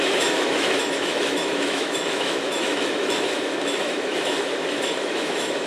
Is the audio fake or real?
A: fake